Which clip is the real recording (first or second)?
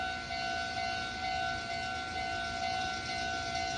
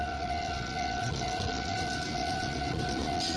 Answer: first